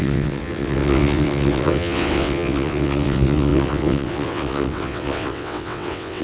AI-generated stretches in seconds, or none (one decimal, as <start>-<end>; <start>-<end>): 0.0-6.2